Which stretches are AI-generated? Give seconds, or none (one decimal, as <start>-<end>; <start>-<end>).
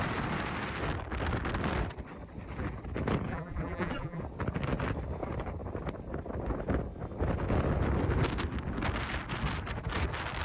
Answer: 3.3-4.2